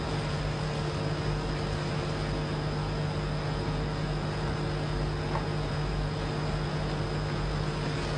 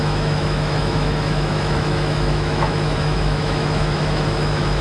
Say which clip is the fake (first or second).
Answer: second